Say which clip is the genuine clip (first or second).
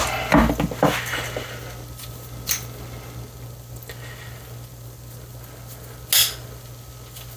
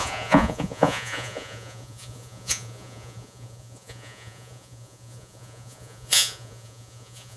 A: first